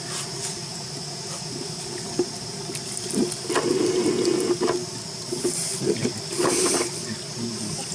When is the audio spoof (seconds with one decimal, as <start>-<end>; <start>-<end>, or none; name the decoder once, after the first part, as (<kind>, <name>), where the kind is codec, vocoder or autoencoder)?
none